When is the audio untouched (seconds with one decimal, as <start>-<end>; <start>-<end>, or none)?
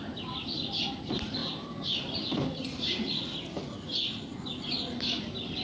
0.0-5.6